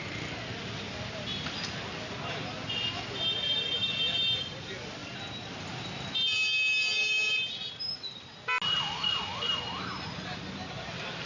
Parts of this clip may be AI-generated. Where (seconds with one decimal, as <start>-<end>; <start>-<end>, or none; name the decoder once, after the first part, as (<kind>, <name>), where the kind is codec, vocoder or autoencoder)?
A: none